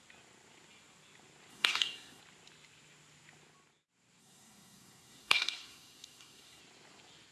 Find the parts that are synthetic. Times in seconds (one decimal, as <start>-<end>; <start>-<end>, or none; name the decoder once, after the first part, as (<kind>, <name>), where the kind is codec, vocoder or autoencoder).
1.5-2.2 (codec, SNAC); 4.2-6.6